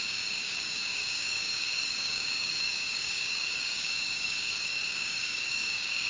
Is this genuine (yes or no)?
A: no